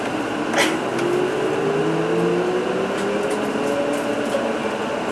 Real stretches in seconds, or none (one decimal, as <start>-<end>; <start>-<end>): 0.0-5.1